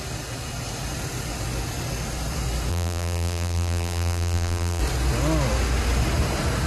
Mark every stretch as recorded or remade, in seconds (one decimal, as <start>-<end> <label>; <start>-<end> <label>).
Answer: 0.0-2.7 recorded; 2.7-4.8 remade; 4.8-6.7 recorded

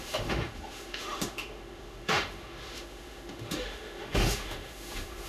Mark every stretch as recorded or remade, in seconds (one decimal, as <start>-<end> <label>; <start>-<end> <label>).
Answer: 0.0-5.3 remade

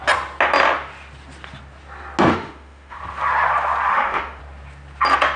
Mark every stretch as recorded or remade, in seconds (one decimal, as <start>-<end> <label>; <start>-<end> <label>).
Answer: 0.0-2.3 recorded; 2.3-3.0 remade; 3.0-3.9 recorded; 3.9-4.4 remade; 4.4-5.4 recorded

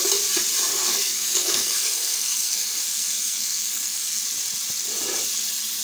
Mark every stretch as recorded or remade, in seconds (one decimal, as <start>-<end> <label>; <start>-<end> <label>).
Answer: 0.0-0.7 recorded; 0.7-4.2 remade; 4.2-5.8 recorded

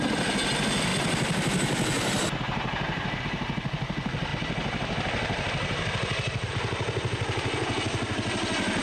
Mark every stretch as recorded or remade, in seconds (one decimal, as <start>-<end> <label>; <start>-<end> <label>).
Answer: 0.0-0.9 recorded; 0.9-3.2 remade; 3.2-4.3 recorded; 4.3-6.5 remade; 6.5-8.8 recorded

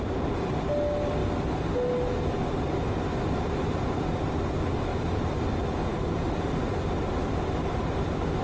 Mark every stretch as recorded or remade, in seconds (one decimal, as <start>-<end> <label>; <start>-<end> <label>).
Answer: 0.0-4.9 recorded; 4.9-5.5 remade; 5.5-8.4 recorded

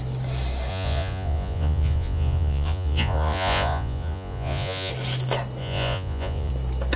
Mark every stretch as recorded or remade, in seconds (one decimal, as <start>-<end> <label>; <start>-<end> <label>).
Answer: 0.0-0.7 recorded; 0.7-4.9 remade; 4.9-5.6 recorded; 5.6-6.5 remade; 6.5-7.0 recorded

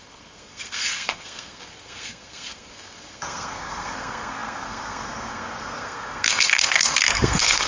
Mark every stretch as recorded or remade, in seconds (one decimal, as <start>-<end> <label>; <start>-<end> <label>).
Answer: 0.0-7.7 remade